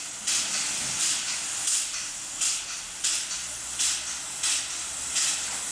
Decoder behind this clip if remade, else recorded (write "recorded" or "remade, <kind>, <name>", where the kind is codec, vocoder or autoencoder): recorded